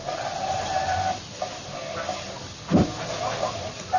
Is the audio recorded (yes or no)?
yes